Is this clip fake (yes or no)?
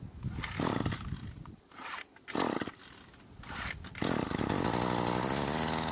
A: no